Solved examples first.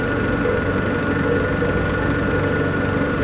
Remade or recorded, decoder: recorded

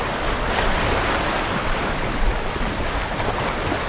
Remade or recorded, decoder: recorded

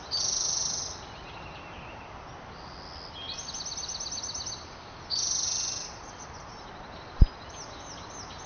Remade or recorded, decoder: recorded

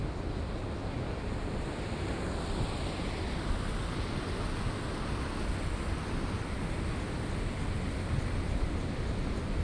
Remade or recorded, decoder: recorded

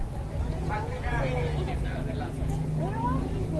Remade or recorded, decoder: recorded